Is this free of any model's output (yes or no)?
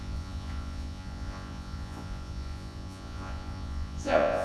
no